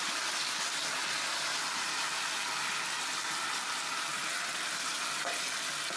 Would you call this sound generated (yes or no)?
no